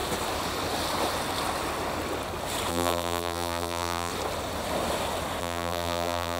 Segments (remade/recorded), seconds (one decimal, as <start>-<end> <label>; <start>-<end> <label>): 0.0-2.7 recorded; 2.7-4.1 remade; 4.1-5.4 recorded; 5.4-6.4 remade